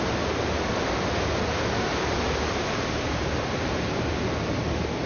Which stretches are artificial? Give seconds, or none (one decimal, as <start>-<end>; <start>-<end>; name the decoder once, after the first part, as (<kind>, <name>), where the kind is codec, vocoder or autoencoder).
1.9-4.1 (vocoder, BigVGAN v2)